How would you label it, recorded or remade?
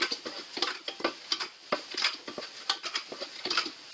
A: recorded